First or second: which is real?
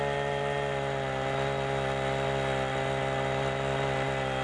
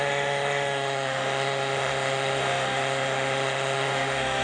first